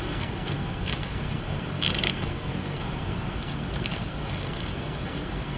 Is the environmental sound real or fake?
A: fake